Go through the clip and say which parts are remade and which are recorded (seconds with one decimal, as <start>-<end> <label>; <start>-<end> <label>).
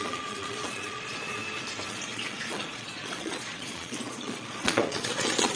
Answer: 0.0-1.4 remade; 1.4-1.9 recorded; 1.9-5.6 remade